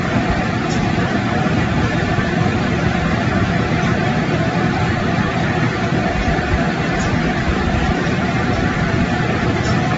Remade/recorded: remade